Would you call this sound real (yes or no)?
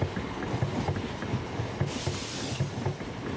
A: yes